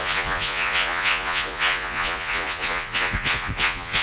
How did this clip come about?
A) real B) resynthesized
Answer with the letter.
B